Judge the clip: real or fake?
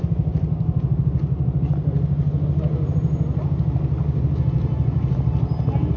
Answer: real